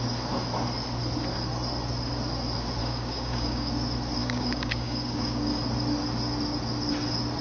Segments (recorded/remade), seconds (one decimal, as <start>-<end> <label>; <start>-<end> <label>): 0.0-2.8 recorded; 2.8-3.7 remade; 3.7-4.2 recorded; 4.2-5.5 remade; 5.5-7.4 recorded